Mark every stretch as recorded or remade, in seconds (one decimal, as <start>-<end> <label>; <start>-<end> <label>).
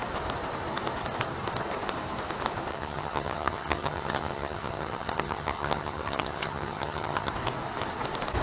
0.0-2.7 recorded; 2.7-7.3 remade; 7.3-8.4 recorded